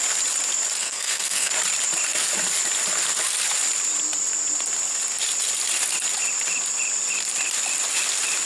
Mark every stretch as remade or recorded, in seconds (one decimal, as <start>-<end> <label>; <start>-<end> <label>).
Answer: 0.0-0.8 recorded; 0.8-1.5 remade; 1.5-8.5 recorded